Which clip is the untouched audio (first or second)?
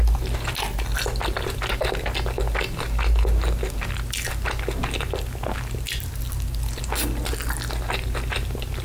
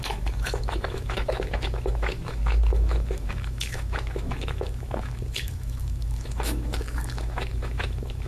first